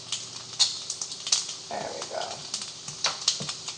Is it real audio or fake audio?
real